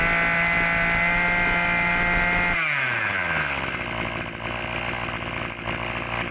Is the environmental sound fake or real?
real